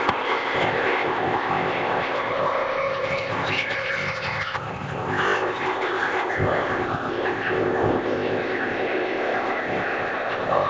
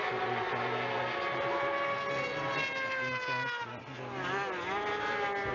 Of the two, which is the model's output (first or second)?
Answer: first